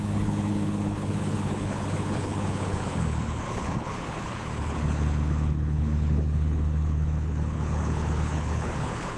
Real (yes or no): no